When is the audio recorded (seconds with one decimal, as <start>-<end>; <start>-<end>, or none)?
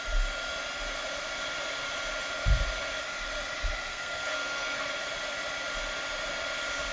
0.0-3.9; 4.9-6.9